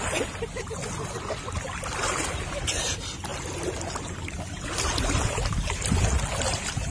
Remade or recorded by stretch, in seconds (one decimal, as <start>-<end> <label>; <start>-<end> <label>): 0.0-6.9 recorded

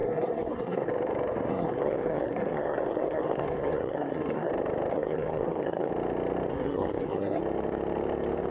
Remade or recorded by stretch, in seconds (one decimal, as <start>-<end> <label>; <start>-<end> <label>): 0.0-0.9 remade; 0.9-1.5 recorded; 1.5-4.5 remade; 4.5-4.9 recorded; 4.9-5.9 remade; 5.9-6.5 recorded; 6.5-7.4 remade; 7.4-8.5 recorded

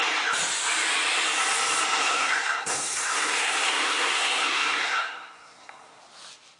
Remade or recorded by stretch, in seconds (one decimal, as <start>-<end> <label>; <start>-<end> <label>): 0.0-2.0 recorded; 2.0-6.0 remade; 6.0-6.6 recorded

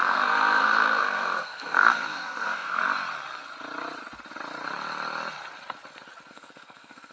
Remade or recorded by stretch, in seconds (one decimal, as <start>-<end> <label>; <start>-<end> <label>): 0.0-2.8 remade; 2.8-6.3 recorded; 6.3-7.1 remade

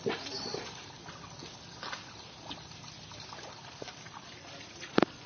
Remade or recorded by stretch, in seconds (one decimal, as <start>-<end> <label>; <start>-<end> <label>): 0.0-5.3 recorded

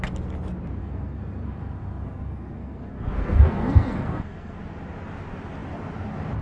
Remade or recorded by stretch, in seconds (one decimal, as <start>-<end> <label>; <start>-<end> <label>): 0.0-0.8 recorded; 0.8-4.6 remade; 4.6-6.4 recorded